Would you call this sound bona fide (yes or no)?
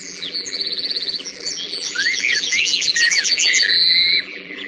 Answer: no